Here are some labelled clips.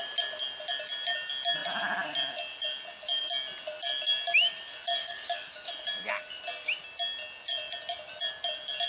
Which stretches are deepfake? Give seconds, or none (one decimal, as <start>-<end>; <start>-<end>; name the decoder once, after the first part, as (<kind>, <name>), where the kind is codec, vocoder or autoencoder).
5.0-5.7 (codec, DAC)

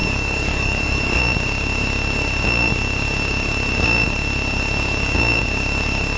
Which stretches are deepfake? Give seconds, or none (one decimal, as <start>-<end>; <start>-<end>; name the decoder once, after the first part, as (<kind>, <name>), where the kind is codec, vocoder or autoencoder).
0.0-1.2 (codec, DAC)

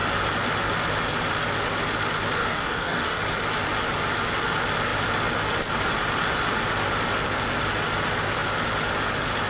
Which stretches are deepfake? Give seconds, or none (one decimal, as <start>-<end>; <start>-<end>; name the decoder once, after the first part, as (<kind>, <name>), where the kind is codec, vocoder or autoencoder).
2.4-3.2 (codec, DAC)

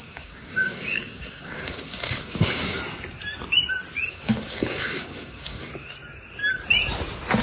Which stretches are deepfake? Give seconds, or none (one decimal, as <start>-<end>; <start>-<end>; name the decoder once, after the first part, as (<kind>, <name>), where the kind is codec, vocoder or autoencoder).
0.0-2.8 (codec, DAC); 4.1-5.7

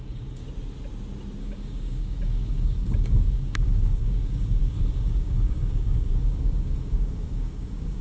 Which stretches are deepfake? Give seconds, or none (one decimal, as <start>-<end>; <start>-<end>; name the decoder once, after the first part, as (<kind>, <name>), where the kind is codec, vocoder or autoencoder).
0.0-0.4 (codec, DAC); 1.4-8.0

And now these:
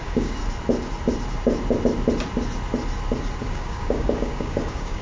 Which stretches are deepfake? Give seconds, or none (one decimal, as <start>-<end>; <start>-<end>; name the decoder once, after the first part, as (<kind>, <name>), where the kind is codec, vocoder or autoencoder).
0.0-0.4 (codec, DAC); 3.4-5.0